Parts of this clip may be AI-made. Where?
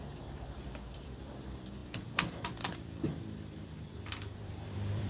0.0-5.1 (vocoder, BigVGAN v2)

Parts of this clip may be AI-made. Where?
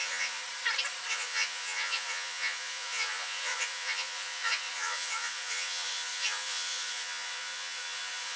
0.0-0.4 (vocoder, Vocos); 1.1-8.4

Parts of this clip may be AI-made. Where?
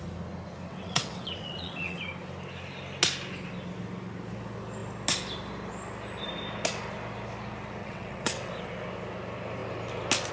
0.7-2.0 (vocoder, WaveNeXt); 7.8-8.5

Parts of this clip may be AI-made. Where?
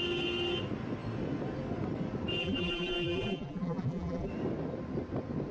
2.4-4.3 (vocoder, BigVGAN v2)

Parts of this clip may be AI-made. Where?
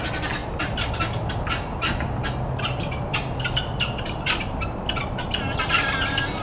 none